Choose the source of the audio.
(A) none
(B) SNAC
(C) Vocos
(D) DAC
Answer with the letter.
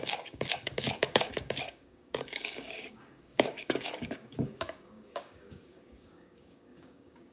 D